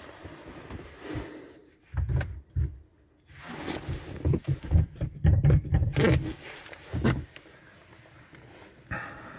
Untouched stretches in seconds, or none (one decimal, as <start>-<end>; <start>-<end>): 0.0-9.4